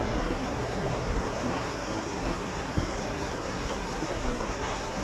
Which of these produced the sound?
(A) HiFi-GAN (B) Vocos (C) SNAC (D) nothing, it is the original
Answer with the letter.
C